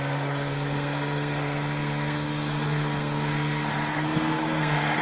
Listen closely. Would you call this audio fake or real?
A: fake